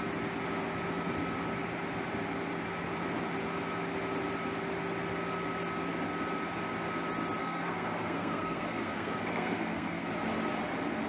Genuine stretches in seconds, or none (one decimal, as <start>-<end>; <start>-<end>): 0.0-7.4; 10.1-11.1